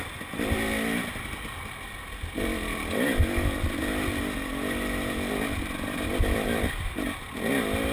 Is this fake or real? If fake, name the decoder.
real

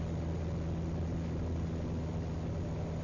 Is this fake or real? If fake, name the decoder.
real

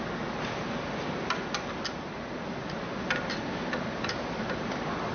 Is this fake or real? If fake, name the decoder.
real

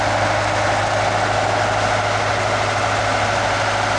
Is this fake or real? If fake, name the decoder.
real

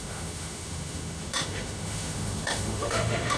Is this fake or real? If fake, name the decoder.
fake, autoencoder, DAC-VAE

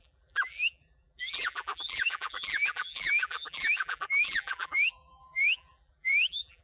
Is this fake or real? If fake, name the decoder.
fake, vocoder, BigVGAN v2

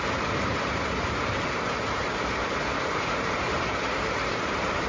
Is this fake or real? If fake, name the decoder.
fake, vocoder, BigVGAN v2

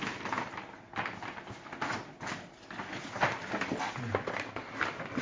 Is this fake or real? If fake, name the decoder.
real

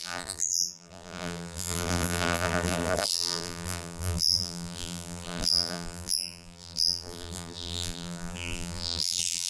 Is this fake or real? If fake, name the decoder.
fake, vocoder, BigVGAN v2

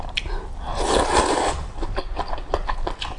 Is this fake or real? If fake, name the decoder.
real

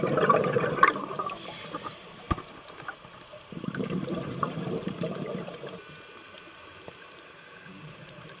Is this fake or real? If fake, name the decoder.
fake, vocoder, BigVGAN v2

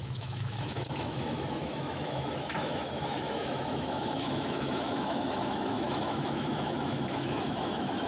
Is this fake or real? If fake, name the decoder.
fake, autoencoder, DAC-VAE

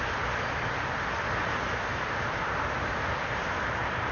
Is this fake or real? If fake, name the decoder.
fake, vocoder, BigVGAN v2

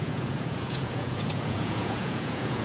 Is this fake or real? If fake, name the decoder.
fake, vocoder, Vocos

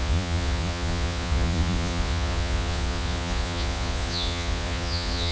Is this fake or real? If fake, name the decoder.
fake, vocoder, Vocos